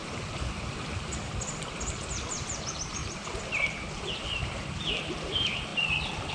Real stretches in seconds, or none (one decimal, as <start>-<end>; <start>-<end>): 3.0-3.9; 5.7-6.3